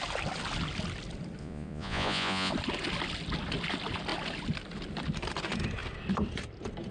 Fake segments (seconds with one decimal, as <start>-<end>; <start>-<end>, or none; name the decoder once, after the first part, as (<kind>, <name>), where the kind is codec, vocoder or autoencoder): 1.4-2.5 (vocoder, Vocos)